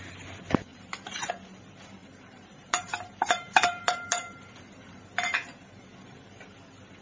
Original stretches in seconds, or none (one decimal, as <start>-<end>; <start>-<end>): 0.0-0.7; 1.3-2.0; 5.0-7.0